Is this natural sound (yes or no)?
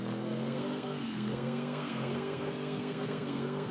no